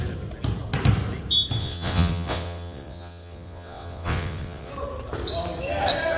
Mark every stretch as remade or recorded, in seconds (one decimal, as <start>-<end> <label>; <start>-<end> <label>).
0.0-1.6 recorded; 1.6-4.7 remade; 4.7-6.2 recorded